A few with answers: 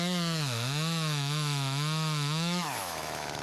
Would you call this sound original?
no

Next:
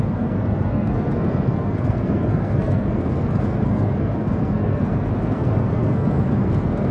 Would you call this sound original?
no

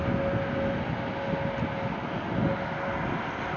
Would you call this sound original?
yes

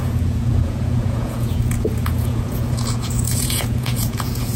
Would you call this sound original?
no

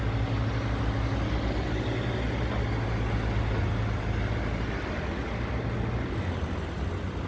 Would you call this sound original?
yes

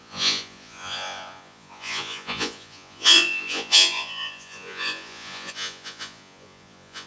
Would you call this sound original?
no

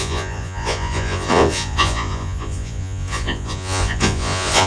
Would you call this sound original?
no